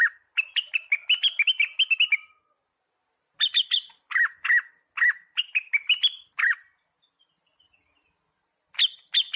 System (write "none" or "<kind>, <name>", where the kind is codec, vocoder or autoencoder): none